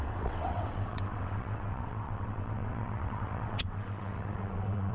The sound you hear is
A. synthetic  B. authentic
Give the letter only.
A